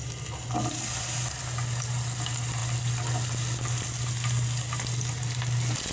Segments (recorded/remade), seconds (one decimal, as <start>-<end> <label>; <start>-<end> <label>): 0.0-5.9 recorded